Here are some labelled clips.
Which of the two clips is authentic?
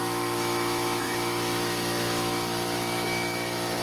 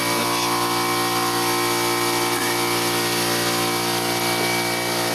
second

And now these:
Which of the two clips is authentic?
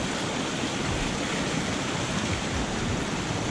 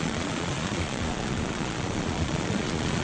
first